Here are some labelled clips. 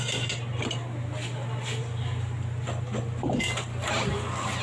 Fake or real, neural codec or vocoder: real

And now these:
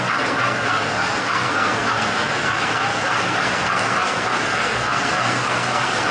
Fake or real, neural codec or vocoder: fake, codec, SNAC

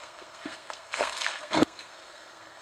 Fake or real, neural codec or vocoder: fake, codec, SNAC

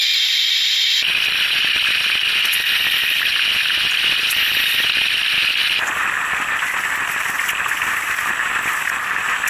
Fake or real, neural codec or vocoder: real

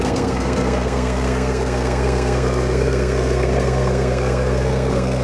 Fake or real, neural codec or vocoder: fake, codec, SNAC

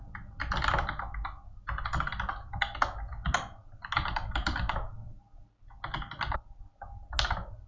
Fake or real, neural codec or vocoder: real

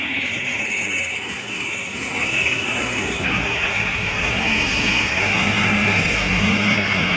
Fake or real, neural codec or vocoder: fake, codec, SNAC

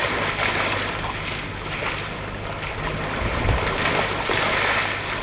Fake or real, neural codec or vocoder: real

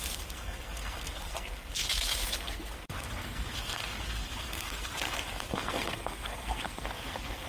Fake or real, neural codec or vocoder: fake, codec, SNAC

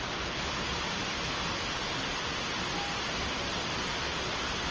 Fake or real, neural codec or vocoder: real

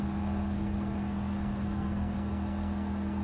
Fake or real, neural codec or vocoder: fake, codec, SNAC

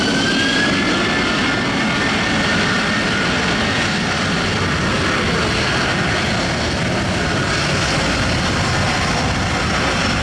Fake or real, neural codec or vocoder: real